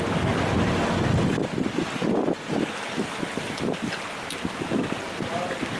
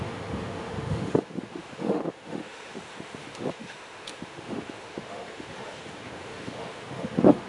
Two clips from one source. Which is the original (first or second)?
first